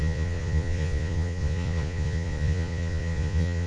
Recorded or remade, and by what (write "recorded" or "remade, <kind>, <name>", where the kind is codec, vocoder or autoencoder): remade, vocoder, Vocos